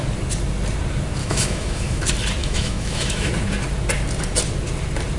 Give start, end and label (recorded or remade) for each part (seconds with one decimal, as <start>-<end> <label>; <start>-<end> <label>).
0.0-1.2 recorded; 1.2-2.0 remade; 2.0-2.4 recorded; 2.4-3.3 remade; 3.3-5.2 recorded